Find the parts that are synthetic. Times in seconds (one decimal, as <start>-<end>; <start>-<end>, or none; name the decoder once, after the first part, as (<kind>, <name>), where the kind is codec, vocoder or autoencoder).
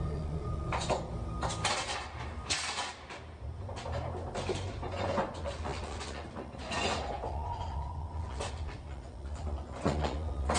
0.0-1.1 (vocoder, Vocos); 4.7-10.6